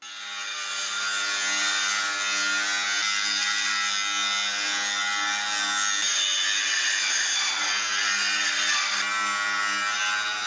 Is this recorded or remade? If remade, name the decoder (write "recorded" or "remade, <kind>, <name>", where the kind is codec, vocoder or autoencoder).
recorded